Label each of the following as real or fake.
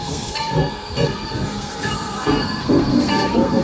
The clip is fake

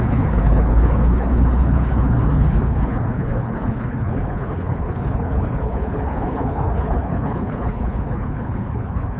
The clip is fake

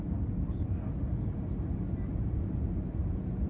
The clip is real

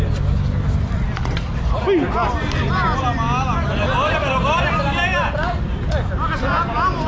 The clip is real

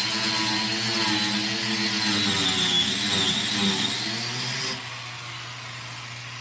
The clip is real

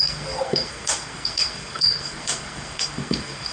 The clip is fake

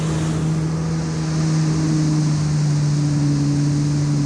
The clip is real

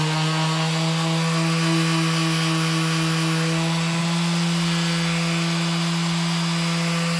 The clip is real